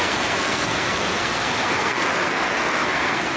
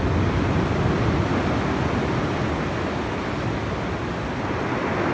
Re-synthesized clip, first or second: first